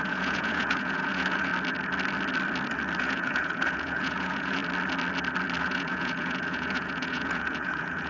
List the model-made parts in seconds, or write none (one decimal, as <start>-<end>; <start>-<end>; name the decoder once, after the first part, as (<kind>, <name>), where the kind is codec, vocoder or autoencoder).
0.0-1.5 (vocoder, Vocos); 3.0-4.6; 5.6-8.1